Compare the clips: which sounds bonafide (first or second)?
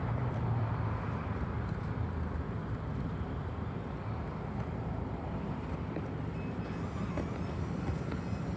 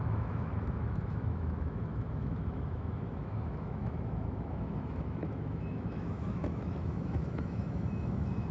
first